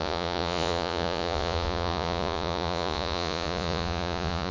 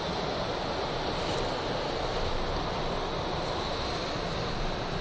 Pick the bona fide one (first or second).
second